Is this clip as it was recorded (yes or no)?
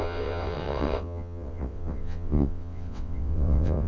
no